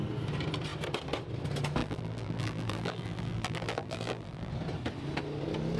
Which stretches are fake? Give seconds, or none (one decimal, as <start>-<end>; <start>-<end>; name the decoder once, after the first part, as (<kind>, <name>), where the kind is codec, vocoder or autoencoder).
1.8-4.5 (vocoder, BigVGAN v2)

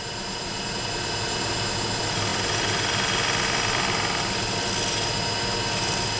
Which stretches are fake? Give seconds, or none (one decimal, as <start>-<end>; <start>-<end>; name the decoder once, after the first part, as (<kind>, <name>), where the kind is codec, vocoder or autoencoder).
none